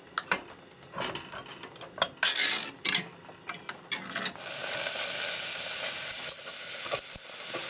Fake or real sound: real